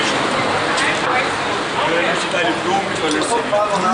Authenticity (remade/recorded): recorded